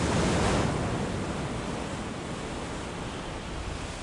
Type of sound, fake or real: real